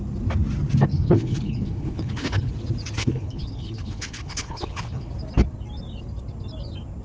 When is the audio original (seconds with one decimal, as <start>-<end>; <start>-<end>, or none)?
0.0-0.9; 2.5-3.0; 5.1-7.0